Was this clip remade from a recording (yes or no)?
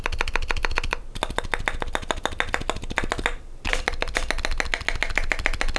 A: no